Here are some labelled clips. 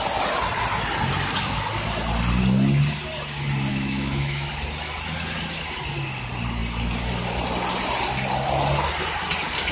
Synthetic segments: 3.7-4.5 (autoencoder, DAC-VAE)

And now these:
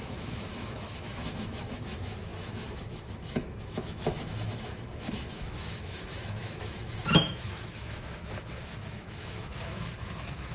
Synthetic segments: 0.0-10.5 (autoencoder, DAC-VAE)

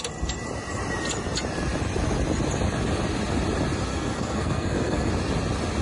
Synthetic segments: 3.9-5.1 (codec, SNAC)

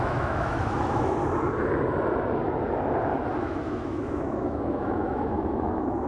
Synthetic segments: 0.0-1.2 (autoencoder, DAC-VAE); 3.4-6.1